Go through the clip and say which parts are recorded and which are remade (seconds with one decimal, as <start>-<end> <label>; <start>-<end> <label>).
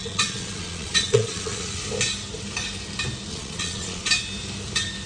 0.0-1.8 remade; 1.8-3.3 recorded; 3.3-4.1 remade; 4.1-5.1 recorded